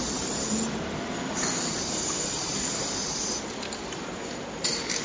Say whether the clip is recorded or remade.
recorded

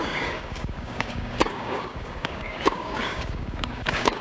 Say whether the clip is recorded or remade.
remade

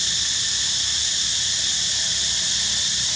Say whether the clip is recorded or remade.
recorded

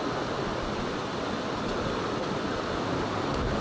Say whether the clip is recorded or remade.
recorded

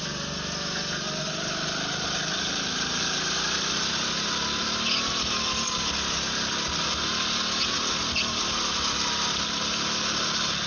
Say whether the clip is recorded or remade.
recorded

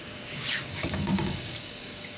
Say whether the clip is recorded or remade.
remade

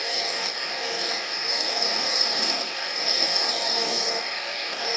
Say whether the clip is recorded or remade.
remade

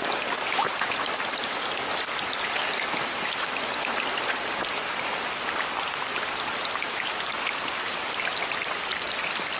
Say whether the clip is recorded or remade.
recorded